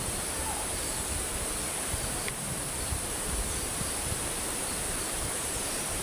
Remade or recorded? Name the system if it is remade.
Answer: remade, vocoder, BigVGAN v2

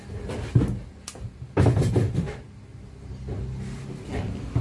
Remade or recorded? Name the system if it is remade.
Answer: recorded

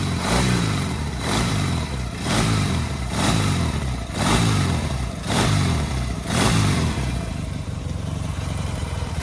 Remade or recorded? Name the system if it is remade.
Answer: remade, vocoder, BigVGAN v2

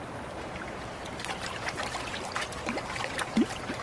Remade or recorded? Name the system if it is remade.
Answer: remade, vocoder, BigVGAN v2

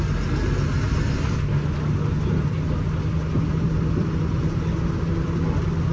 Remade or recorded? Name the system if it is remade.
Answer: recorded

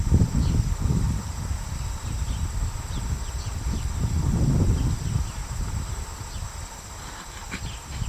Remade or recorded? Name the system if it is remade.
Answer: recorded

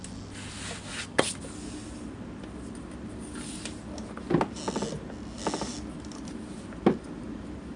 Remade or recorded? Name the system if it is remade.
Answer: recorded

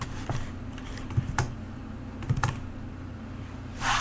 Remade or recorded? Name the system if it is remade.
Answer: recorded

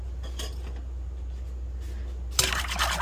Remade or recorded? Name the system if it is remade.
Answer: recorded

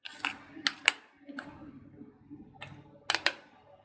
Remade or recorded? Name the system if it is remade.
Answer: recorded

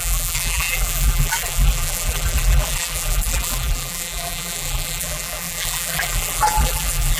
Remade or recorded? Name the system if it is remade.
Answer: remade, vocoder, BigVGAN v2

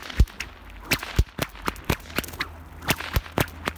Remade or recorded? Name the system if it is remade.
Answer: recorded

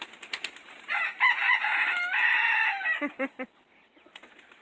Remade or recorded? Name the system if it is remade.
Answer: remade, vocoder, BigVGAN v2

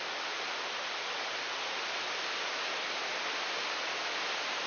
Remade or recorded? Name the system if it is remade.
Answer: recorded